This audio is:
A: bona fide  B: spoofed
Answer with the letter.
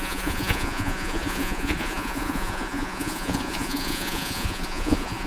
B